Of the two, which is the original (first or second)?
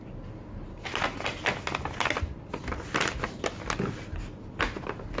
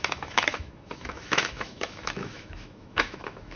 first